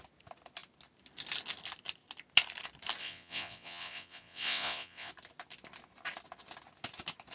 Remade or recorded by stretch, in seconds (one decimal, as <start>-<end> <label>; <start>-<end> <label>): 0.0-3.0 recorded; 3.0-5.1 remade; 5.1-7.3 recorded